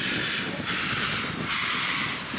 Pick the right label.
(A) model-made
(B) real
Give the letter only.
B